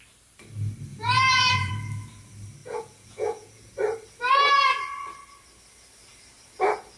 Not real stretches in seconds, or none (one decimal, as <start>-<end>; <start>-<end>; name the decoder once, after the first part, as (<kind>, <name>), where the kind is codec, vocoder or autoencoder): 0.9-1.7 (vocoder, Vocos); 2.6-3.7